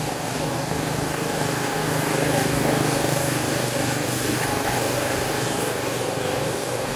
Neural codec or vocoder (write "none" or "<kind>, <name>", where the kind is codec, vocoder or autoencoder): codec, DAC